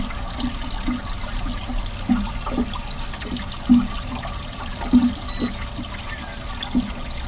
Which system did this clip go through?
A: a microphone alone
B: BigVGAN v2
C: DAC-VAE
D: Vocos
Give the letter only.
A